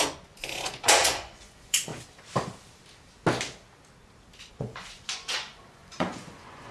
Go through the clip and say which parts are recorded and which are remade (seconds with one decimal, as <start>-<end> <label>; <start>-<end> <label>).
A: 0.0-1.9 remade; 1.9-4.5 recorded; 4.5-6.7 remade